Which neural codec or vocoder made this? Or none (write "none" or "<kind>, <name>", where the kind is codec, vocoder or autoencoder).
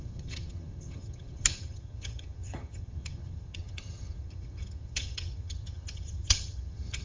vocoder, HiFi-GAN